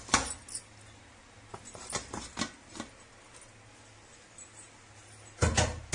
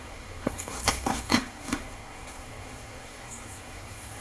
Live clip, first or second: first